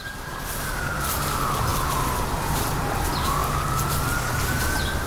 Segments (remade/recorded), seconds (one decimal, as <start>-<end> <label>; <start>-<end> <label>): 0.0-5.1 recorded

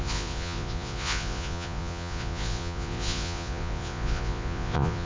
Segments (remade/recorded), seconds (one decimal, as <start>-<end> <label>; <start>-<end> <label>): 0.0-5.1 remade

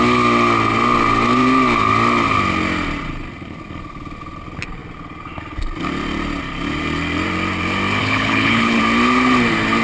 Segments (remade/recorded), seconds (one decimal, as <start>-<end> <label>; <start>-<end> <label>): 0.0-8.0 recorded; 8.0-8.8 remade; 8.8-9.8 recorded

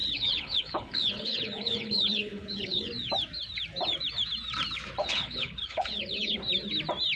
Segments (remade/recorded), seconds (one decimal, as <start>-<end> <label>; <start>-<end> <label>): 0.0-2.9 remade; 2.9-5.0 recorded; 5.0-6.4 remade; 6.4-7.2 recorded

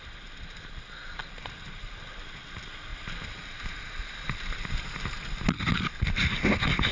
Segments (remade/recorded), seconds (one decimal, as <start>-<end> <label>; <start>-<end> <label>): 0.0-6.9 recorded

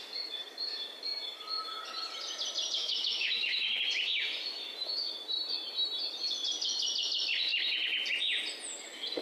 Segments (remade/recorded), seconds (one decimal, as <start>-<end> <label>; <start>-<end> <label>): 0.0-2.8 recorded; 2.8-3.8 remade; 3.8-9.2 recorded

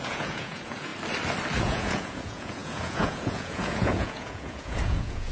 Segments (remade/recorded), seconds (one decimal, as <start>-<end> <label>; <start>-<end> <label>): 0.0-0.9 remade; 0.9-1.6 recorded; 1.6-5.3 remade

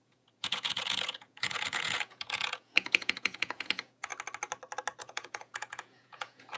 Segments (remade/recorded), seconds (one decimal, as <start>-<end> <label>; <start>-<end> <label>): 0.0-4.1 remade; 4.1-5.0 recorded; 5.0-6.6 remade